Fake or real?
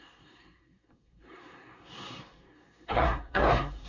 fake